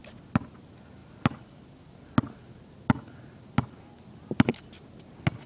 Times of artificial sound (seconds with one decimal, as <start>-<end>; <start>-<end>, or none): 0.0-0.5